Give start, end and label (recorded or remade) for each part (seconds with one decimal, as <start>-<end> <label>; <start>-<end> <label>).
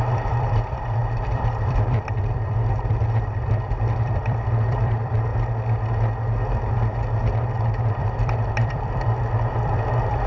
0.0-5.3 remade; 5.3-8.0 recorded; 8.0-10.3 remade